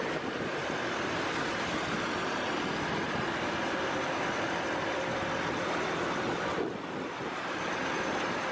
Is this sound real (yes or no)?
yes